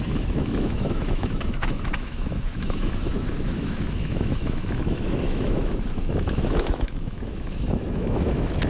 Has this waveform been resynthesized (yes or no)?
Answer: yes